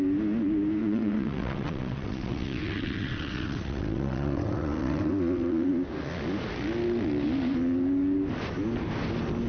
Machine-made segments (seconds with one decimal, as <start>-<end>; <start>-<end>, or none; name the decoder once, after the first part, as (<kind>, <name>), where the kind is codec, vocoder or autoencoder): 0.8-5.7 (vocoder, WaveNeXt)